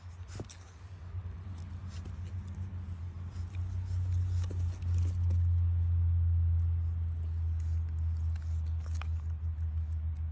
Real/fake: real